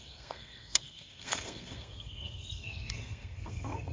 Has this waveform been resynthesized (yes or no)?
yes